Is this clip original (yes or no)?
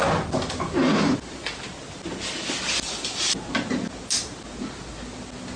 yes